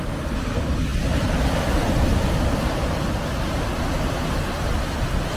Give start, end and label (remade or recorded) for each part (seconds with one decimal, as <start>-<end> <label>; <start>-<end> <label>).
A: 0.0-5.4 recorded